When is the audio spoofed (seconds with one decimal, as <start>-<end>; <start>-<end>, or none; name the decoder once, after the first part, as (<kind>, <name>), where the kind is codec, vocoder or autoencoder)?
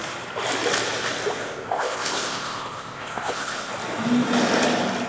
1.4-3.7 (codec, ZipCodec)